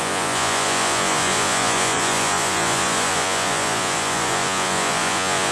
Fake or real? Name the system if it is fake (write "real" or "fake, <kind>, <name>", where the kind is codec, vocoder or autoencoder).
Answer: fake, vocoder, Vocos